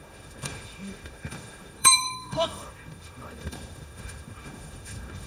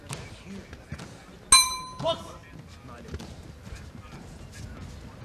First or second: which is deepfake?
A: first